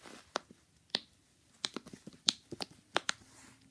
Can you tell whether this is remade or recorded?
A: recorded